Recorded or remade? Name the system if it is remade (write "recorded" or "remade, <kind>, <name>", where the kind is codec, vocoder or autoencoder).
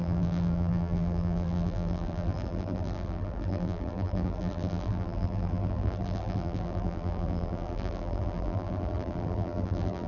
remade, vocoder, BigVGAN v2